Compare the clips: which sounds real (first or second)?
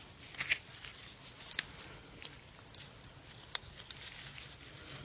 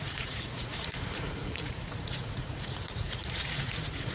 first